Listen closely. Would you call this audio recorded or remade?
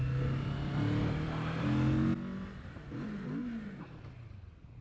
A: recorded